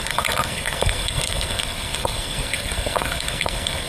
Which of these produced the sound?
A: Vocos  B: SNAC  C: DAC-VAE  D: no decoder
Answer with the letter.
B